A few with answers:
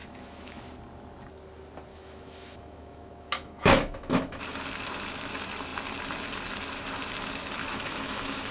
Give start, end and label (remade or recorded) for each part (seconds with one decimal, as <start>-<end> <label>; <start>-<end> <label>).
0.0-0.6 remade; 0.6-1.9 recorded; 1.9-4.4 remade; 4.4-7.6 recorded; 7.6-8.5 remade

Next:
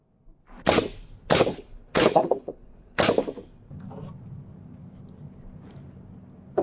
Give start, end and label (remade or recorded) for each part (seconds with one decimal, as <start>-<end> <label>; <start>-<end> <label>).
0.0-1.5 recorded; 1.5-3.0 remade; 3.0-6.6 recorded

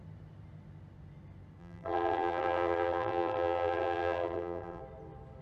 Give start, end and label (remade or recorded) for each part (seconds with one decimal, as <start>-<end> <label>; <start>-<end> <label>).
0.0-1.6 recorded; 1.6-4.8 remade; 4.8-5.4 recorded

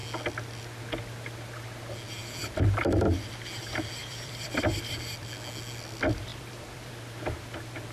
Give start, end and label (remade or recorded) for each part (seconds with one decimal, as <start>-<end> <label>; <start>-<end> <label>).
0.0-2.2 recorded; 2.2-3.3 remade; 3.3-4.0 recorded; 4.0-4.6 remade; 4.6-6.3 recorded; 6.3-6.9 remade; 6.9-7.9 recorded

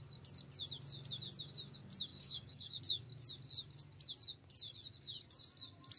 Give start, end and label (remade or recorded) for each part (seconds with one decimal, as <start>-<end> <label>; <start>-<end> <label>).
0.0-2.1 recorded; 2.1-2.8 remade; 2.8-6.0 recorded

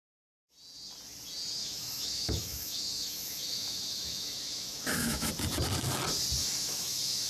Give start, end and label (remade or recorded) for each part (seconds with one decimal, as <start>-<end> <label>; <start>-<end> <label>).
0.0-1.6 recorded; 1.6-5.3 remade; 5.3-6.4 recorded; 6.4-7.3 remade